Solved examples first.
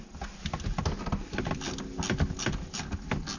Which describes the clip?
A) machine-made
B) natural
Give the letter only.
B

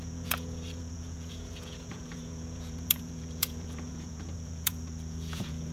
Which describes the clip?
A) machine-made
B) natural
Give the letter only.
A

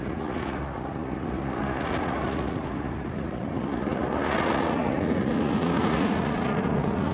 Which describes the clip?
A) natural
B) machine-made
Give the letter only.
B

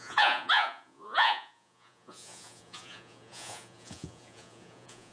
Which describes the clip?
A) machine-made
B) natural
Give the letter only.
A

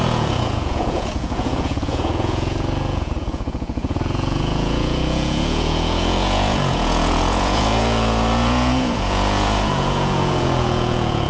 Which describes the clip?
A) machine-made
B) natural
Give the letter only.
A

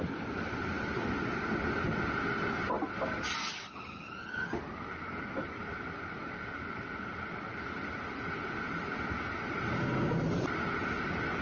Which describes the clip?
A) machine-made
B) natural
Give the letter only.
B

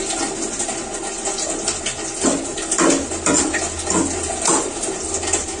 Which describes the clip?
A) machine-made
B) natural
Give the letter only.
B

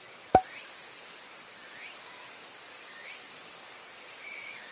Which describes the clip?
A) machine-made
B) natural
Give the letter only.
B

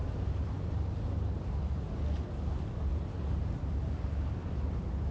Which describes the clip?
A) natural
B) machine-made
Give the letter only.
A